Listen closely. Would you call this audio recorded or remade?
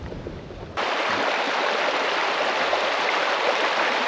recorded